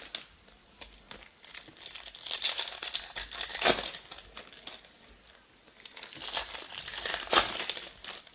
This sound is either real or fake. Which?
real